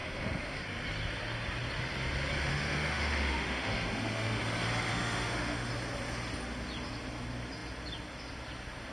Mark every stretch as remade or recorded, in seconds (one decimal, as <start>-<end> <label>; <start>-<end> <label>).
0.0-0.6 remade; 0.6-2.5 recorded; 2.5-4.4 remade; 4.4-4.9 recorded; 4.9-5.7 remade; 5.7-8.9 recorded